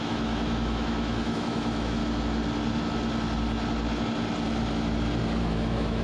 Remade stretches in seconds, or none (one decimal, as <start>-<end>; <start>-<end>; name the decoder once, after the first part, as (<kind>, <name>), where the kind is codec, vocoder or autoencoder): 0.0-2.0 (autoencoder, DAC-VAE); 5.4-6.0